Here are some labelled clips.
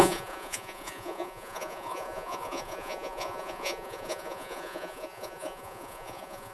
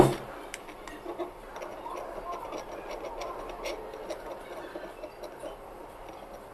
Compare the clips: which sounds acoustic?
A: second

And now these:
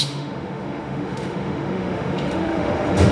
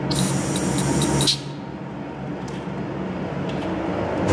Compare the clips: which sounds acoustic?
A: second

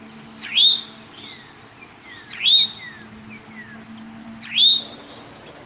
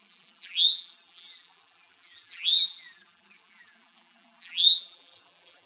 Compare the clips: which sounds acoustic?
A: first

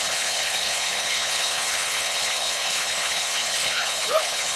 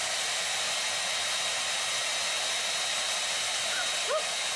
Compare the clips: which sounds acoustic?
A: second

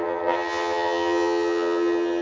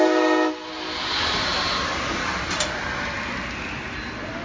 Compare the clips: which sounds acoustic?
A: second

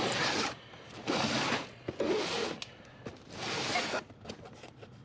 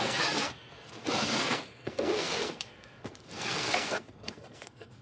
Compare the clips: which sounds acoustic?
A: first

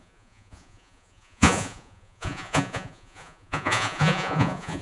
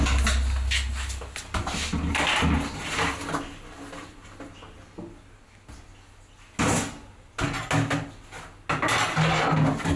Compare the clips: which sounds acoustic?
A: second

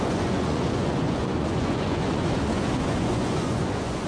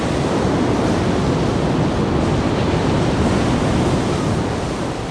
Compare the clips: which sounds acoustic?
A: second